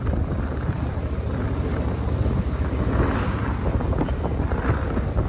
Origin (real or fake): real